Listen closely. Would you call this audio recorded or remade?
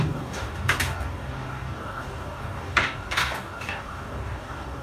remade